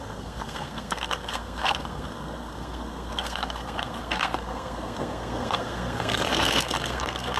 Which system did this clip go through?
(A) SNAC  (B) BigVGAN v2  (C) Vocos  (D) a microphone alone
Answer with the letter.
A